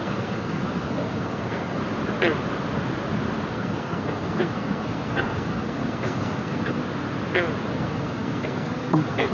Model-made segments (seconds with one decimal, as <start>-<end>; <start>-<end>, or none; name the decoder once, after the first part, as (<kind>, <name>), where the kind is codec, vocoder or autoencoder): 0.0-1.8 (codec, SNAC); 3.5-6.8; 7.7-9.3